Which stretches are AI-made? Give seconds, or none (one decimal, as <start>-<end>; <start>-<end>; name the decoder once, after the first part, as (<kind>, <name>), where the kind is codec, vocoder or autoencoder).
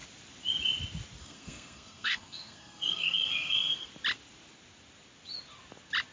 1.2-3.9 (codec, SNAC)